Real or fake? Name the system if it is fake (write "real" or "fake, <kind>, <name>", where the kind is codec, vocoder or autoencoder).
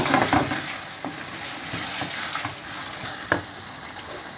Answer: real